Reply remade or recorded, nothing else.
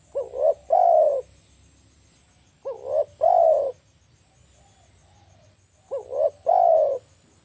recorded